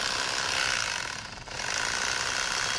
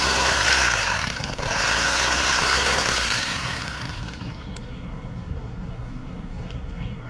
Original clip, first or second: first